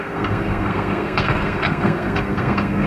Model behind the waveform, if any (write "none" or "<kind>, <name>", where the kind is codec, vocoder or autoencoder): codec, SNAC